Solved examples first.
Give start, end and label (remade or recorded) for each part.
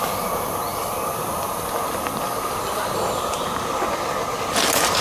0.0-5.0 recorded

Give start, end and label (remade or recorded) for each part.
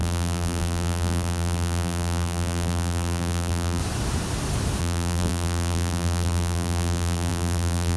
0.0-3.8 remade; 3.8-4.8 recorded; 4.8-8.0 remade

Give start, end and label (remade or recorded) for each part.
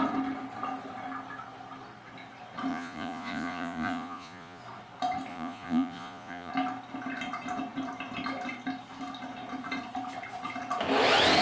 0.0-2.7 recorded; 2.7-4.6 remade; 4.6-5.3 recorded; 5.3-6.5 remade; 6.5-11.4 recorded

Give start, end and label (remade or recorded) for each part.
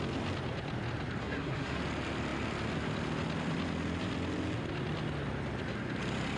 0.0-1.2 recorded; 1.2-1.8 remade; 1.8-6.4 recorded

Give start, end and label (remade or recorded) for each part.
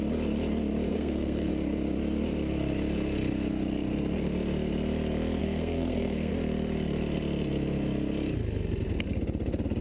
0.0-0.9 recorded; 0.9-1.5 remade; 1.5-5.4 recorded; 5.4-6.3 remade; 6.3-9.8 recorded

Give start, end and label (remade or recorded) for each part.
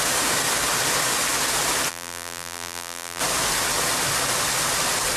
0.0-1.9 recorded; 1.9-3.2 remade; 3.2-5.2 recorded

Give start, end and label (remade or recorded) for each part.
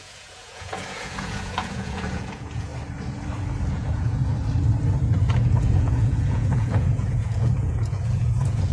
0.0-2.7 remade; 2.7-3.7 recorded; 3.7-4.3 remade; 4.3-5.6 recorded; 5.6-8.7 remade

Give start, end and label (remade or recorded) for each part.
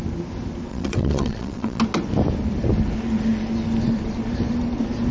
0.0-0.7 recorded; 0.7-1.8 remade; 1.8-5.1 recorded